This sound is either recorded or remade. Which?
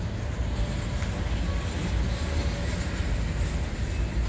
recorded